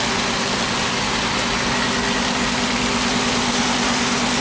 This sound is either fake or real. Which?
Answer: real